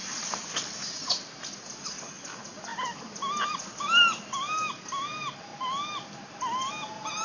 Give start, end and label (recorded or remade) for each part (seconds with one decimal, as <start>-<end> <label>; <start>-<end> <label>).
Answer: 0.0-7.2 recorded